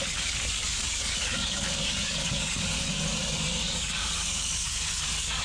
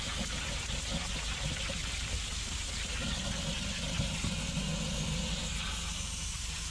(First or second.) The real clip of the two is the second